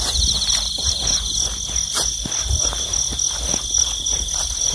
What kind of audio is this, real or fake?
real